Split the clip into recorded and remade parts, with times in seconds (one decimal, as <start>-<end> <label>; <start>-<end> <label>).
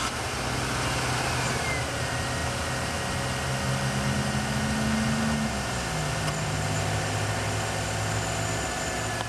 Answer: 0.0-9.3 recorded